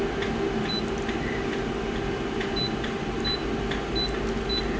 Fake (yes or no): no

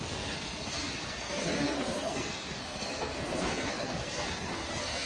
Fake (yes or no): yes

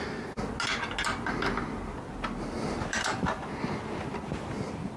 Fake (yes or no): no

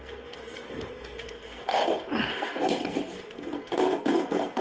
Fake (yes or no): yes